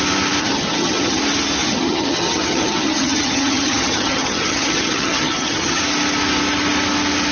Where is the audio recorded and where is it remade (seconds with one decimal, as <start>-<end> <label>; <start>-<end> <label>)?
0.0-0.4 recorded; 0.4-1.2 remade; 1.2-1.6 recorded; 1.6-5.8 remade; 5.8-7.3 recorded

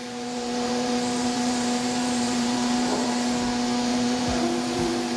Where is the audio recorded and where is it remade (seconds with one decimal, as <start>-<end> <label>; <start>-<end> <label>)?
0.0-3.1 remade; 3.1-3.9 recorded; 3.9-5.2 remade